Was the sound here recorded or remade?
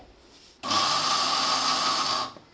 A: recorded